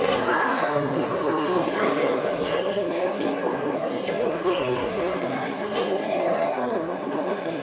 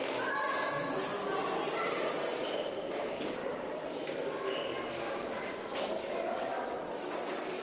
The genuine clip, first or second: second